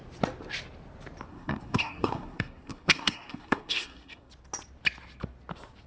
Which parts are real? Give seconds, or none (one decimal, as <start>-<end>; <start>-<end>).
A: 0.0-1.3; 4.3-5.9